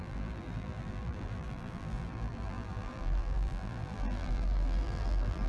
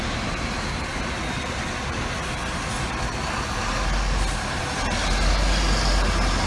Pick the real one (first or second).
second